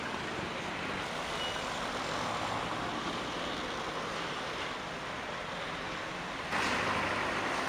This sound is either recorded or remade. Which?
recorded